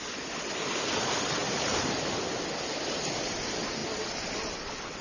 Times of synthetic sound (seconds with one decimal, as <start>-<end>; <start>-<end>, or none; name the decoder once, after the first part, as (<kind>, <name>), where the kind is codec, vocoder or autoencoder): 1.4-2.0 (vocoder, BigVGAN v2); 3.8-4.3